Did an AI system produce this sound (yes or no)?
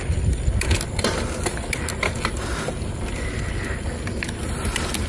no